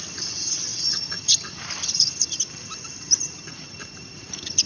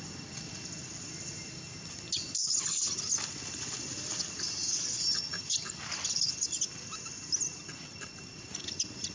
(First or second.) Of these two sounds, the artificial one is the first